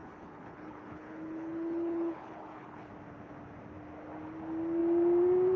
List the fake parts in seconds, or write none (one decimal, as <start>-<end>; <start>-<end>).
0.0-2.9